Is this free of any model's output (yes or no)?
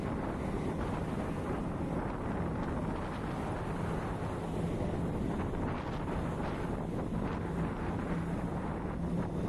yes